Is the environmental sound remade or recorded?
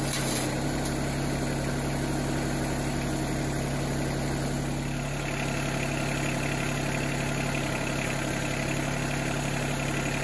recorded